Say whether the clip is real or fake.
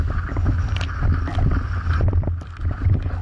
real